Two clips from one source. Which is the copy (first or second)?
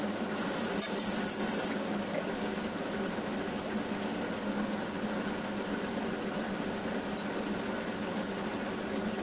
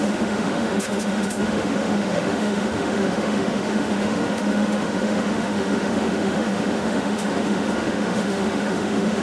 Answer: second